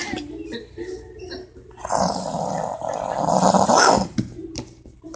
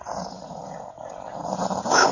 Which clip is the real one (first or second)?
first